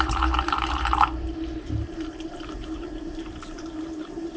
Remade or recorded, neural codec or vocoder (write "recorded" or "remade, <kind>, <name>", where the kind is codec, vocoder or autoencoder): remade, vocoder, BigVGAN v2